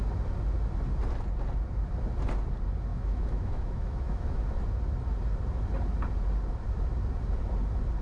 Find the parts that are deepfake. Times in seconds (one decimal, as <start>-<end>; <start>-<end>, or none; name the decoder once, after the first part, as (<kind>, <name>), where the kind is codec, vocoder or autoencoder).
2.9-4.4 (autoencoder, DAC-VAE)